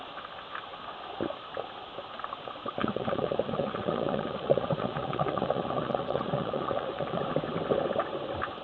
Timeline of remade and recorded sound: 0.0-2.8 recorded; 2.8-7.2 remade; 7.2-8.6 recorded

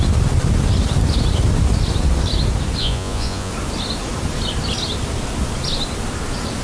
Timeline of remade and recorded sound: 0.0-2.8 recorded; 2.8-3.5 remade; 3.5-6.6 recorded

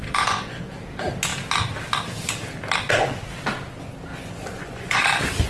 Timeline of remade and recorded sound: 0.0-0.8 remade; 0.8-4.1 recorded; 4.1-5.0 remade; 5.0-5.5 recorded

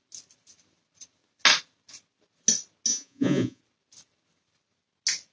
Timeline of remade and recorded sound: 0.0-2.9 recorded; 2.9-3.6 remade; 3.6-5.3 recorded

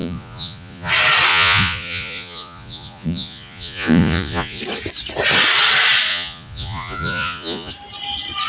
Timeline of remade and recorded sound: 0.0-0.9 remade; 0.9-1.3 recorded; 1.3-4.6 remade; 4.6-6.1 recorded; 6.1-7.7 remade; 7.7-8.5 recorded

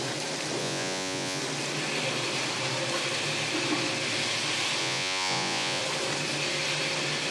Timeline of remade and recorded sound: 0.0-0.6 recorded; 0.6-1.4 remade; 1.4-4.8 recorded; 4.8-5.8 remade; 5.8-7.3 recorded

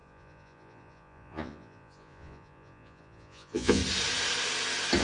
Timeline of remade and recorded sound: 0.0-3.8 remade; 3.8-5.0 recorded

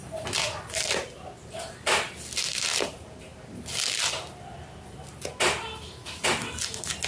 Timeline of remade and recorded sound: 0.0-7.1 recorded